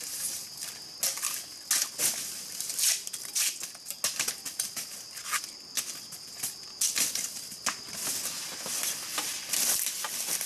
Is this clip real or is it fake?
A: real